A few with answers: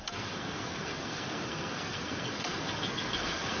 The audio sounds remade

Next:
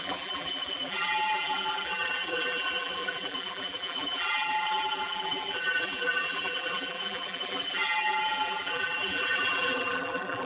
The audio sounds remade